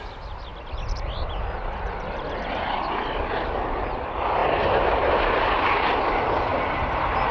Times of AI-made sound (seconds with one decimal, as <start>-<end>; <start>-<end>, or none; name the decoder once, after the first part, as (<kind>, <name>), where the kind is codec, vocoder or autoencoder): none